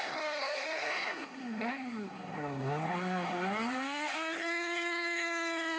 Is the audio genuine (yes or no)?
no